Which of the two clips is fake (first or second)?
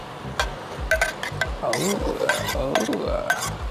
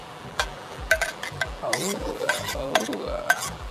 second